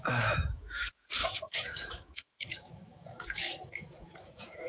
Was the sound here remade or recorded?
remade